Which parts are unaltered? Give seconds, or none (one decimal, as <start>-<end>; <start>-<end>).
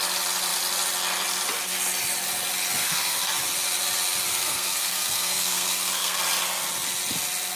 0.0-2.8; 3.3-4.3; 6.2-7.6